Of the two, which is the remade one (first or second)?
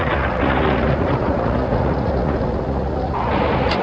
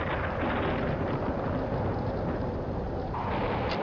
first